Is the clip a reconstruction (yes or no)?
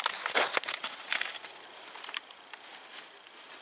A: no